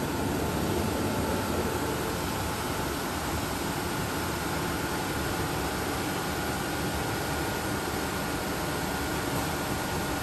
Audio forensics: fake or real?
real